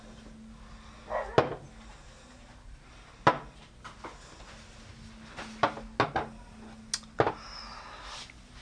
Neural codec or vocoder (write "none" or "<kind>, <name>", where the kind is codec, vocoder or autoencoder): none